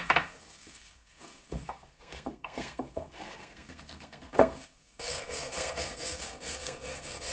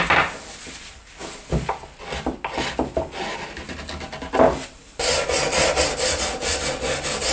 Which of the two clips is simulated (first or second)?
first